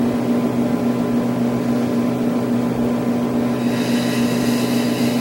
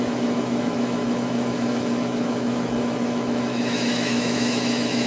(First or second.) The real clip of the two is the first